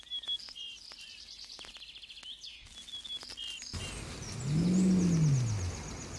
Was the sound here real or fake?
real